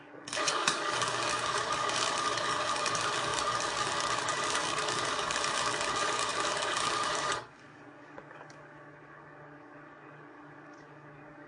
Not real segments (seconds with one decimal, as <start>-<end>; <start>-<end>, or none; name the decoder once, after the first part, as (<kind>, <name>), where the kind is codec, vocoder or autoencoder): 0.0-11.5 (codec, DAC)